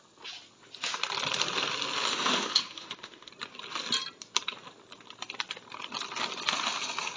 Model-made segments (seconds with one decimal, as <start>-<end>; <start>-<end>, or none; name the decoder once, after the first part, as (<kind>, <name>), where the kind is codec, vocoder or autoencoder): 2.1-3.3 (autoencoder, DAC-VAE)